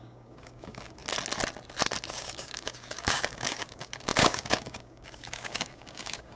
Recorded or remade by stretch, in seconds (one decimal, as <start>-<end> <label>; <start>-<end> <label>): 0.0-1.0 remade; 1.0-2.1 recorded; 2.1-6.4 remade